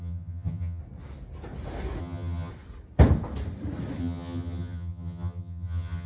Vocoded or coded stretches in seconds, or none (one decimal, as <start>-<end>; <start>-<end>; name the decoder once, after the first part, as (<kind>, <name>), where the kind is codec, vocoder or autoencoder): 0.0-0.8 (vocoder, HiFi-GAN); 2.0-2.5; 4.0-6.1